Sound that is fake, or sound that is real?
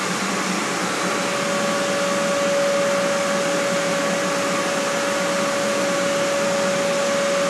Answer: real